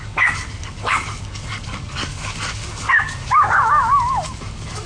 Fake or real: fake